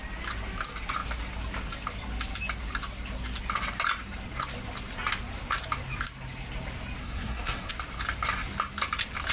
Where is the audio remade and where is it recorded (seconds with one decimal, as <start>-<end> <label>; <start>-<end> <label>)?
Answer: 0.0-7.0 recorded; 7.0-7.7 remade; 7.7-9.3 recorded